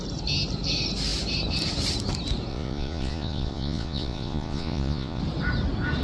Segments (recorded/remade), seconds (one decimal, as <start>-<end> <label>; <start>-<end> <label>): 0.0-2.5 recorded; 2.5-5.2 remade; 5.2-6.0 recorded

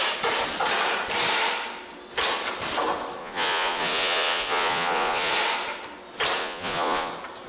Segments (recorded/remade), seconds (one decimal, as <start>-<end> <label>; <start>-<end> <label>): 0.0-3.2 recorded; 3.2-5.3 remade; 5.3-6.4 recorded; 6.4-7.1 remade; 7.1-7.5 recorded